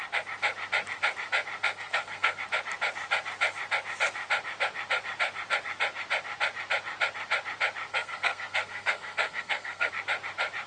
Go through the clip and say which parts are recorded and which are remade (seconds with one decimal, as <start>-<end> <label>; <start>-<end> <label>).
0.0-1.6 recorded; 1.6-2.4 remade; 2.4-7.9 recorded; 7.9-9.9 remade; 9.9-10.7 recorded

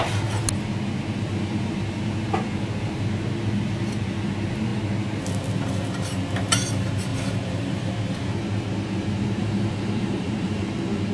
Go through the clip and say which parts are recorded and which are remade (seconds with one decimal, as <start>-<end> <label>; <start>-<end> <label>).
0.0-7.1 recorded; 7.1-7.9 remade; 7.9-9.4 recorded; 9.4-10.7 remade; 10.7-11.1 recorded

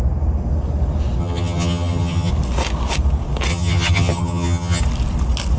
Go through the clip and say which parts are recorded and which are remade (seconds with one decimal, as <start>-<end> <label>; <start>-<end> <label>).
0.0-1.2 recorded; 1.2-2.3 remade; 2.3-3.5 recorded; 3.5-4.8 remade; 4.8-5.6 recorded

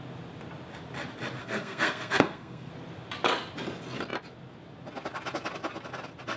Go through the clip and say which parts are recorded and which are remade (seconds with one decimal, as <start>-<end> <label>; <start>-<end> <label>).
0.0-1.4 recorded; 1.4-2.7 remade; 2.7-6.4 recorded

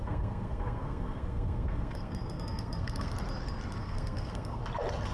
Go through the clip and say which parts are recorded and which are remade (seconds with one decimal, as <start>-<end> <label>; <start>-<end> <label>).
0.0-3.1 remade; 3.1-3.8 recorded; 3.8-4.6 remade; 4.6-5.1 recorded

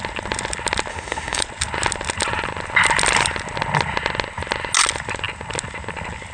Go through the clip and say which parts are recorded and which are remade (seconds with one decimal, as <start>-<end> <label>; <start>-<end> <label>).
0.0-0.9 recorded; 0.9-1.4 remade; 1.4-6.3 recorded

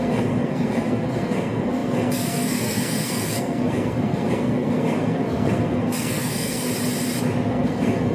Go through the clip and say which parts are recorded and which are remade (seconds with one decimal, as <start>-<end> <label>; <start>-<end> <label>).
0.0-6.7 remade; 6.7-7.5 recorded; 7.5-8.1 remade

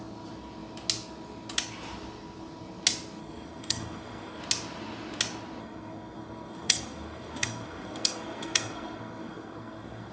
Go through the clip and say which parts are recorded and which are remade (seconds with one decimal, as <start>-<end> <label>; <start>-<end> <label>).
0.0-3.2 recorded; 3.2-4.4 remade; 4.4-5.6 recorded; 5.6-10.1 remade